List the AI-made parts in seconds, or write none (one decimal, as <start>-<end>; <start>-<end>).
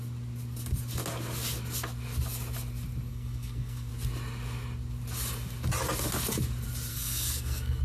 3.1-3.9; 6.9-7.8